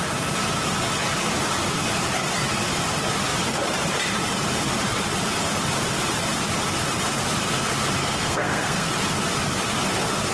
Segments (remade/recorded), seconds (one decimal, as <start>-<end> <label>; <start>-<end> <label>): 0.0-8.0 recorded; 8.0-8.9 remade; 8.9-10.3 recorded